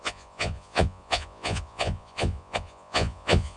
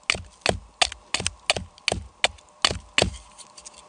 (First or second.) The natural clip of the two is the second